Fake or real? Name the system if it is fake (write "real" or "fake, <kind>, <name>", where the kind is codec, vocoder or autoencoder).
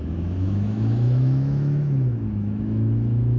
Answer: fake, autoencoder, DAC-VAE